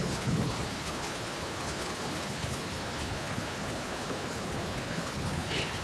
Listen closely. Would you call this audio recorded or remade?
remade